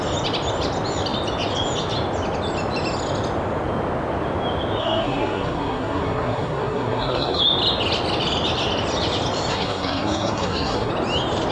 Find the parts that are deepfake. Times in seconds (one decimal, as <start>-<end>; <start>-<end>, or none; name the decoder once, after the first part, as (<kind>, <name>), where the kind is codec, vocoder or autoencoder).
4.8-7.4 (codec, SNAC); 9.5-10.9